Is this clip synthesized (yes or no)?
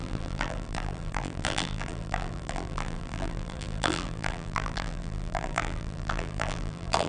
yes